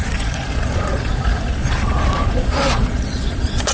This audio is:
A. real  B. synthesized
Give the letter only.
B